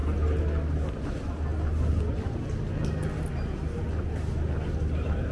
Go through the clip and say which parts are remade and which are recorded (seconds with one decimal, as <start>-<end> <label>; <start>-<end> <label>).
0.0-5.3 recorded